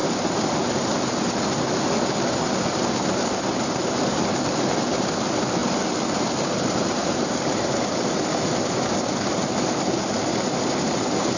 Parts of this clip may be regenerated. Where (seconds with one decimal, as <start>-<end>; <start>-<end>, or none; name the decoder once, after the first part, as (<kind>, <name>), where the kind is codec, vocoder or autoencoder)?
none